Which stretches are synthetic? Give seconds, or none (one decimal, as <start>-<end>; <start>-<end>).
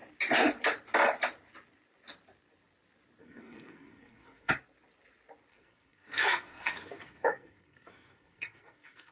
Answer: 3.2-4.5; 5.5-9.1